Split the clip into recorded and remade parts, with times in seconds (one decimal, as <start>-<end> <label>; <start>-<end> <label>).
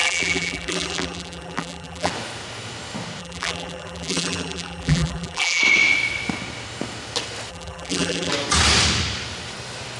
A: 0.0-2.1 remade; 2.1-3.2 recorded; 3.2-5.6 remade; 5.6-7.5 recorded; 7.5-8.3 remade; 8.3-10.0 recorded